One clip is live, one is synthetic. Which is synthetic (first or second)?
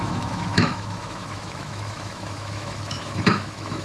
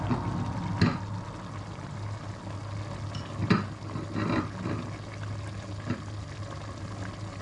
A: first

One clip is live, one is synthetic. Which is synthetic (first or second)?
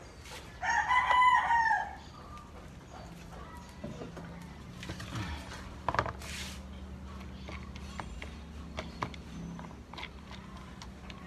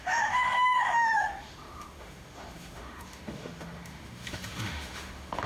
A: second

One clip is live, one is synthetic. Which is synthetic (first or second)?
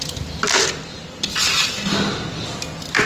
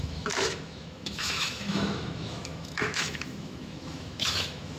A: second